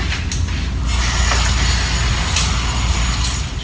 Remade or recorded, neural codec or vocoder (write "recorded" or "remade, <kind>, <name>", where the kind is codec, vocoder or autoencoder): recorded